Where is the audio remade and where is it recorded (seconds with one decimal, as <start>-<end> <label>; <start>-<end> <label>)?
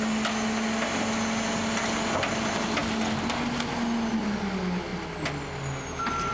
0.0-6.3 recorded